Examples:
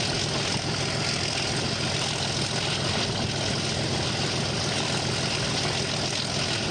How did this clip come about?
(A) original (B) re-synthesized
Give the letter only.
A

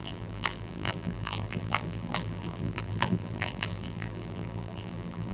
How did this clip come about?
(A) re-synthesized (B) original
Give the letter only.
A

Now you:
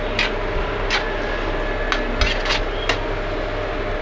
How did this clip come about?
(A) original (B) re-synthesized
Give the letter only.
A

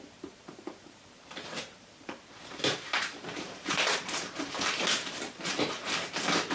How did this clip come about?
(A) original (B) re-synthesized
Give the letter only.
B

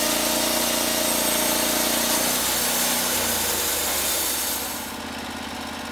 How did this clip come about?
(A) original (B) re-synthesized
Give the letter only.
A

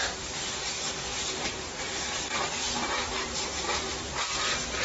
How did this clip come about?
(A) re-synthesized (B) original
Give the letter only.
A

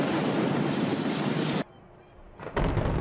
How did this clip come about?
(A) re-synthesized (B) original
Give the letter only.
A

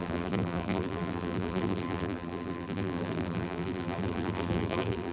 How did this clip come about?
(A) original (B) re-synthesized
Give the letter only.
B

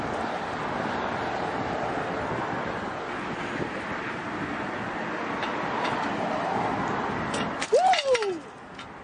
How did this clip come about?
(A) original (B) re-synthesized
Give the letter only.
A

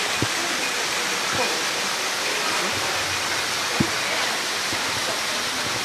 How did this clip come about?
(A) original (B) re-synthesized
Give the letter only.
A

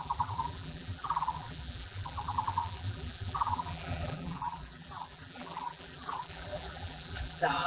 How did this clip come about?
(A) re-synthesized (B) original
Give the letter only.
A